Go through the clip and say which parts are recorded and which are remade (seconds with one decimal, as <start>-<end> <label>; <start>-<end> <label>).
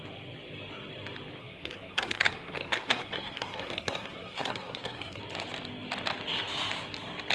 0.0-1.4 recorded; 1.4-5.2 remade; 5.2-7.3 recorded